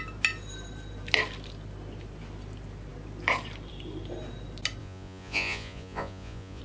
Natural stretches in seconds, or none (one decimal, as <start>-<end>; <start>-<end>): 0.0-4.8